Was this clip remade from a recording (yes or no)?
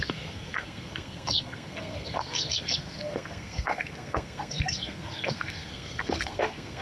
yes